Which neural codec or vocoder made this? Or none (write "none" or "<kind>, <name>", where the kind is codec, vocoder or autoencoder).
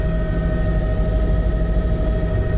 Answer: none